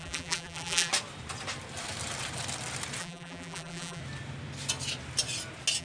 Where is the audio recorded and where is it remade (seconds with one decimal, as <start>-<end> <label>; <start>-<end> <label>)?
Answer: 0.0-0.9 remade; 0.9-3.0 recorded; 3.0-4.0 remade; 4.0-5.8 recorded